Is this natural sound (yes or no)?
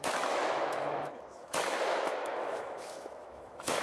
no